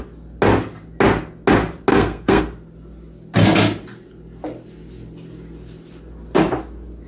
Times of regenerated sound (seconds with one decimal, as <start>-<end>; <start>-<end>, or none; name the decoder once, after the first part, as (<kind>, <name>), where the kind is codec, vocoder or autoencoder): 1.9-2.4 (codec, SNAC)